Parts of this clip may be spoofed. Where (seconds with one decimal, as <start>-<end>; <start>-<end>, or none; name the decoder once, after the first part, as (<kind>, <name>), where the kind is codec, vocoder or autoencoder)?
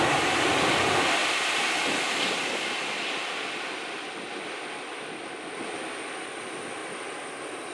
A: none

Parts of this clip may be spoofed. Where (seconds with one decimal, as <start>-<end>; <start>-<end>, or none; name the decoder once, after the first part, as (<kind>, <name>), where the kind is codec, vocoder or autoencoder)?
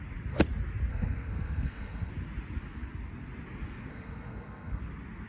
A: 0.9-2.1 (codec, SNAC); 3.9-4.8